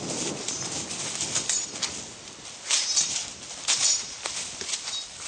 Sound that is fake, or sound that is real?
real